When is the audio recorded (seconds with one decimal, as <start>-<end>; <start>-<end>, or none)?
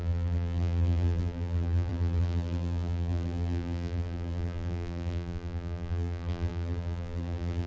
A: none